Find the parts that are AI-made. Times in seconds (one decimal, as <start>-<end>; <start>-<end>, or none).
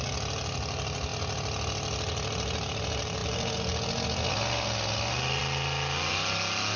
none